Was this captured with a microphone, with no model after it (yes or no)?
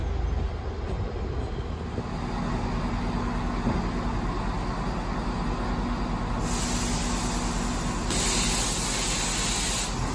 yes